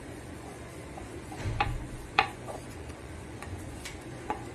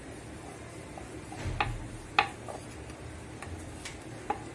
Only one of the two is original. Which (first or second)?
second